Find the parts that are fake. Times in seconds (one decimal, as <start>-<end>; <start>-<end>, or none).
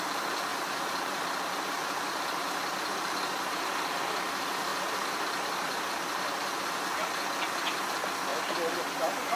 0.5-3.4; 4.7-7.1; 8.3-8.9